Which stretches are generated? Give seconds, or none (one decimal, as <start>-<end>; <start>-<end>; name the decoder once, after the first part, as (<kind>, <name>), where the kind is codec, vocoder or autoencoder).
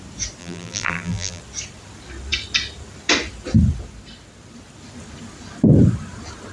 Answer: 0.4-1.4 (vocoder, BigVGAN v2)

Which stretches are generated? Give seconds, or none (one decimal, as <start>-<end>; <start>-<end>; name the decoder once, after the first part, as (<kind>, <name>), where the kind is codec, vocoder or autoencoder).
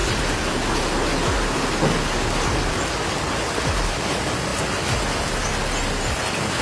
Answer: none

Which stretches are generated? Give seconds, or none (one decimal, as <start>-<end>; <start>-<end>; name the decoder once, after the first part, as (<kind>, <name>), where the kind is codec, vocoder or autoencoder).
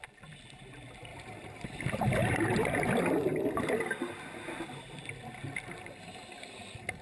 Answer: 1.1-1.8 (vocoder, BigVGAN v2)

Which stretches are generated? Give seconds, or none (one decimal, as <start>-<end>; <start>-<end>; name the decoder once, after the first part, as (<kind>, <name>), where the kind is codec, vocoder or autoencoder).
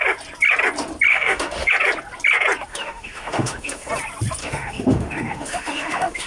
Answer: 1.1-1.7 (autoencoder, DAC-VAE); 2.7-3.9; 4.4-6.3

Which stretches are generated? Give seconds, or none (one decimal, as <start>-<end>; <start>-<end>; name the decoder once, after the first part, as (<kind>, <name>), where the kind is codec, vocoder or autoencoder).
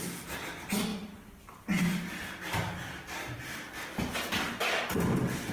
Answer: none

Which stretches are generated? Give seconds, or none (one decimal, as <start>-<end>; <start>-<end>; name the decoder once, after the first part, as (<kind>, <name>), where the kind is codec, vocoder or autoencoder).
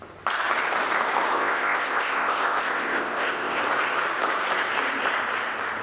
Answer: 1.3-3.6 (codec, ZipCodec)